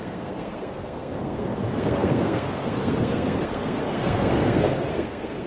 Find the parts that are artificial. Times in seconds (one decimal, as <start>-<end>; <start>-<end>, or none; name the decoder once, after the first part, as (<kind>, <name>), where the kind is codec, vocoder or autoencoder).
0.0-5.5 (codec, SNAC)